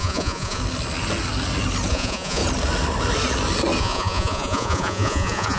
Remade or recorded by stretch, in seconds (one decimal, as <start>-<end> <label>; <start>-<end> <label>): 0.0-0.6 remade; 0.6-1.9 recorded; 1.9-2.4 remade; 2.4-3.8 recorded; 3.8-5.6 remade